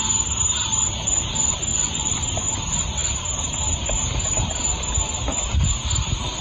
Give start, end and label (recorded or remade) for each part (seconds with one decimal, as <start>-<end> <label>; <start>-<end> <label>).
0.0-1.7 recorded; 1.7-2.2 remade; 2.2-6.4 recorded

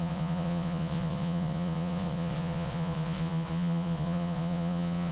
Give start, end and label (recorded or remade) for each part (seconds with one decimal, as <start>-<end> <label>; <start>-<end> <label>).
0.0-5.1 remade